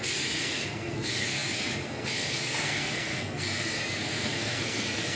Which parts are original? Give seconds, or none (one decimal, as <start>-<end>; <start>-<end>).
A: none